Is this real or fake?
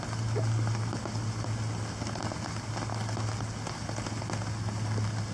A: real